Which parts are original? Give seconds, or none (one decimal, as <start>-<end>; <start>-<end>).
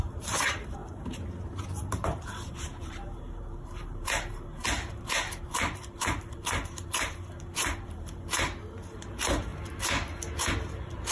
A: 9.5-10.5